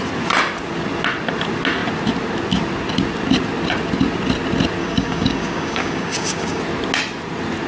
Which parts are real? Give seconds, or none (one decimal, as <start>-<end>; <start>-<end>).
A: 0.0-4.8; 6.6-7.7